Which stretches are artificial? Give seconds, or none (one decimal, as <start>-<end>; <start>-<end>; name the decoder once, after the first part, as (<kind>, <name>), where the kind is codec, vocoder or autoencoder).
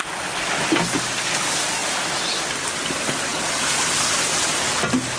none